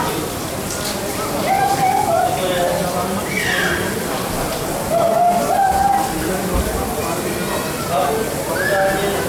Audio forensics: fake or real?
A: real